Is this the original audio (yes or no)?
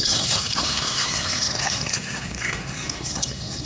no